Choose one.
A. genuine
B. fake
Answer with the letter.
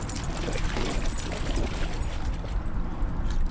A